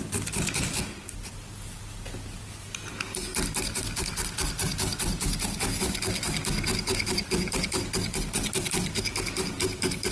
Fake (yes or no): no